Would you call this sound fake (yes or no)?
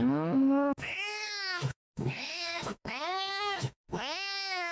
yes